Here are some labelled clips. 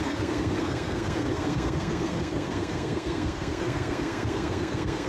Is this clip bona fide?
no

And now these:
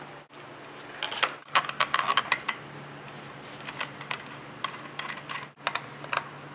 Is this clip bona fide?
yes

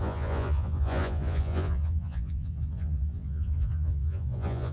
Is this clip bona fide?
no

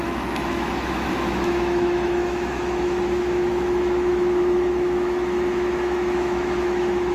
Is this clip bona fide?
no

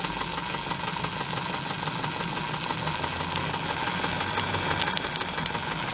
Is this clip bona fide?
yes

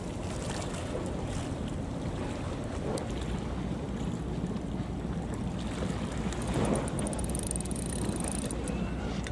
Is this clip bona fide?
yes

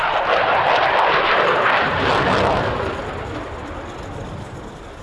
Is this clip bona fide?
yes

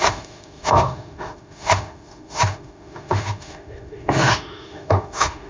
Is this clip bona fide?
no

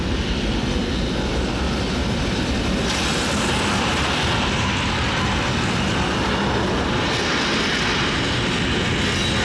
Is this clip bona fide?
yes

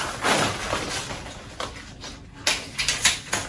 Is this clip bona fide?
yes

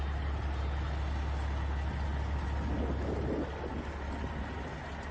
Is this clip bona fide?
yes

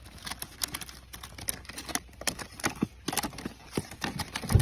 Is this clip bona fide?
yes